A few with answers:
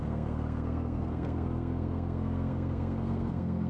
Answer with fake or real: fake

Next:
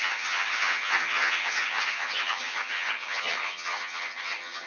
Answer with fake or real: fake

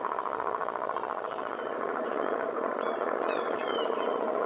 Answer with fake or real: fake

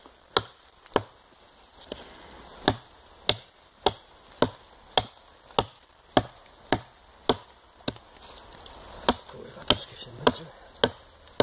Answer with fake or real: real